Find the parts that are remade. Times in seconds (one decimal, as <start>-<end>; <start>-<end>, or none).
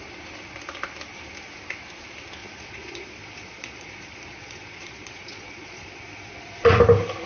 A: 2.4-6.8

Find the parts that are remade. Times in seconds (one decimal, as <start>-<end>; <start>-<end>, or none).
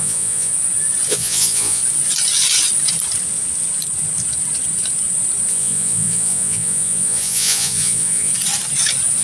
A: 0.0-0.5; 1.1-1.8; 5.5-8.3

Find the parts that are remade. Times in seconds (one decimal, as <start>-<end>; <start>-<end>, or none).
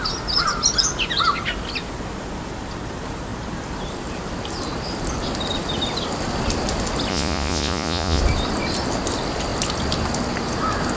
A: 7.1-8.2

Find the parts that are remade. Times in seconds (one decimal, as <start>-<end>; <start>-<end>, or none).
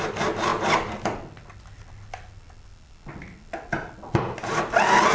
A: none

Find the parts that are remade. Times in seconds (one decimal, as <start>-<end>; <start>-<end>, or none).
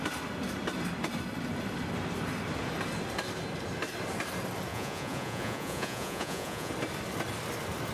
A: 4.7-6.7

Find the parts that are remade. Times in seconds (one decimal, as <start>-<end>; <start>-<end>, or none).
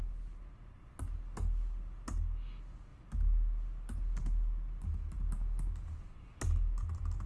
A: none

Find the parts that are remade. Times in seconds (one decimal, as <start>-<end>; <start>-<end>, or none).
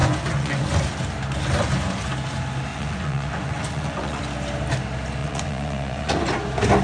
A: 0.0-0.8; 2.7-4.2; 5.2-6.2